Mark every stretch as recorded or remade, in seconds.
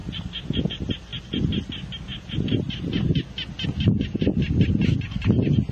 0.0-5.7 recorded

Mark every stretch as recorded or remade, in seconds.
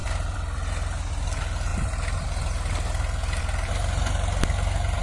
0.0-1.1 remade; 1.1-5.0 recorded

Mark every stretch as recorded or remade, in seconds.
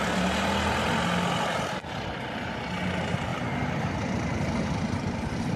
0.0-5.6 recorded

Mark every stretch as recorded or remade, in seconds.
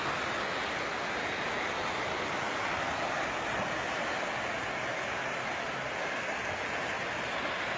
0.0-0.7 remade; 0.7-7.8 recorded